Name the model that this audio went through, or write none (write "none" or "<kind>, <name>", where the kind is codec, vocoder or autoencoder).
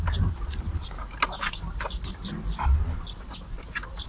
none